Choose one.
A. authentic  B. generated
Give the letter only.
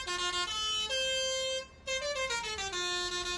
A